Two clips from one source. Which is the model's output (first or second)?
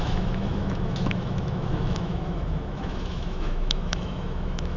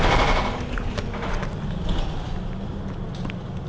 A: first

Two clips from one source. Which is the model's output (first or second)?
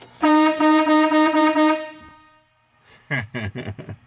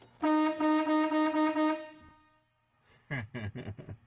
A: first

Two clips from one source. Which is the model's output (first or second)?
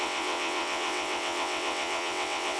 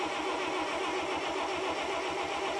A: first